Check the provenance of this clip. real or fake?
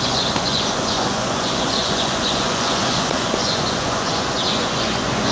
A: fake